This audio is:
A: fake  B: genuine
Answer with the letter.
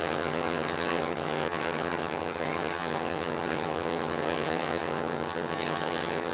A